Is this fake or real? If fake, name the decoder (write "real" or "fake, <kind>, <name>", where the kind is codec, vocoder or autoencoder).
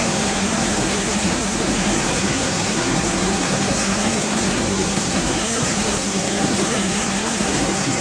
fake, codec, SNAC